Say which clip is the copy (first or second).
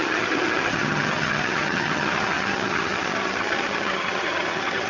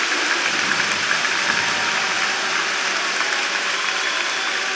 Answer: first